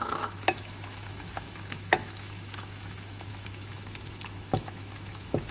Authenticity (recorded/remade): remade